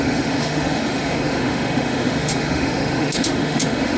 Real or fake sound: fake